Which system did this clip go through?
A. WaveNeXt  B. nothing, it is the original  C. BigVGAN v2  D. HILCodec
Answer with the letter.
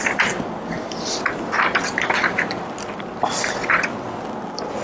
B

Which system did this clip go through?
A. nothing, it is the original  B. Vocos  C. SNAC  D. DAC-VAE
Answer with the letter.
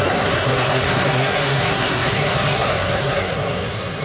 C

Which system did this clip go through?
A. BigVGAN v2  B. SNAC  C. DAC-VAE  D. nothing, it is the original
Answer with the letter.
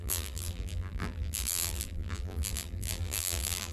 A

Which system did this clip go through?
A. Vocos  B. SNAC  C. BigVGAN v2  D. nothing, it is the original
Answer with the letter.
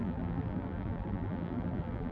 C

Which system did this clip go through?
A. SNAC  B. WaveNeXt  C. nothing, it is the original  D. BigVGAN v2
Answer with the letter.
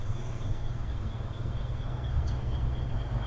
A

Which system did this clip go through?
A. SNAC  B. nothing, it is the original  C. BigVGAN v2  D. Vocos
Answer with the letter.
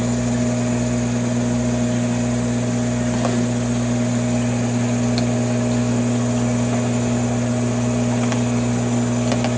B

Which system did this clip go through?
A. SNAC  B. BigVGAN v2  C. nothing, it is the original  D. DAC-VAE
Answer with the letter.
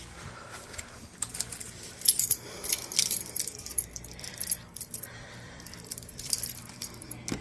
B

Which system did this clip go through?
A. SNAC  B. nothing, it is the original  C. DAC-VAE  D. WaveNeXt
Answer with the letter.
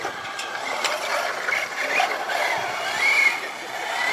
B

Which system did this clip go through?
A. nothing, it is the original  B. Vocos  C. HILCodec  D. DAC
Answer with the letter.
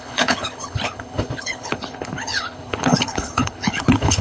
C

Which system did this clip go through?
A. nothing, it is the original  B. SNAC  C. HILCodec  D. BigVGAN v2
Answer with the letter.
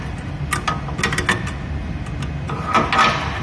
A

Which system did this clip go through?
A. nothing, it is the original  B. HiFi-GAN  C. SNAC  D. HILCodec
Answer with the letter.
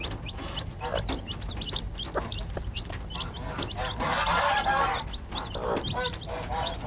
A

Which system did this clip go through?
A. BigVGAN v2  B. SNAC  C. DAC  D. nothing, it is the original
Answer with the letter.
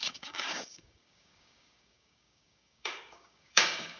C